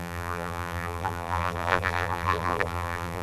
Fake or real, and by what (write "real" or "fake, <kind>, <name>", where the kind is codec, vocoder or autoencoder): fake, vocoder, BigVGAN v2